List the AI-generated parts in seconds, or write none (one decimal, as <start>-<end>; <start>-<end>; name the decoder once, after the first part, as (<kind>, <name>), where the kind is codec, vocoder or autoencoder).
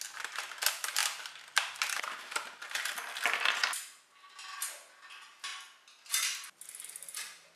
none